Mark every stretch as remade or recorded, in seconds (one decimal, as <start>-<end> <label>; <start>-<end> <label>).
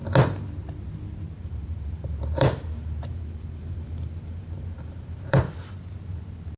0.0-1.4 recorded; 1.4-5.4 remade; 5.4-6.6 recorded